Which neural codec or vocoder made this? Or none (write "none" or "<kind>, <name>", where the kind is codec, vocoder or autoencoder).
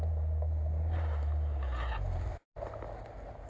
none